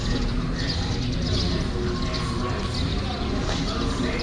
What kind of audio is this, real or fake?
real